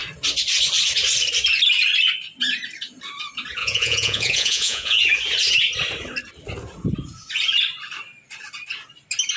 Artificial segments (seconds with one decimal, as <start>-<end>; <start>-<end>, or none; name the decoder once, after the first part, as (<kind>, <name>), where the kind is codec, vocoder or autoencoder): 3.6-5.0 (vocoder, Vocos)